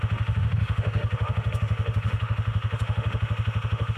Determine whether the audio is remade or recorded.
remade